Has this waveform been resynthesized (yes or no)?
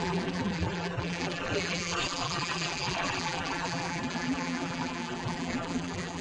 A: yes